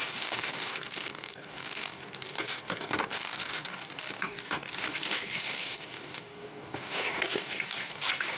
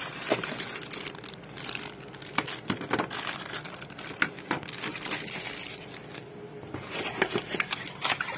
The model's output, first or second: first